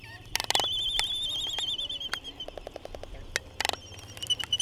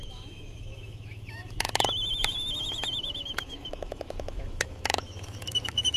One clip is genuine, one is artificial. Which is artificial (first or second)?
second